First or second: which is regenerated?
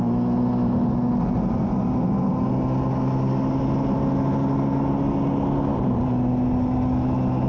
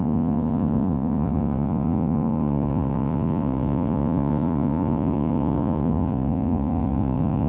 second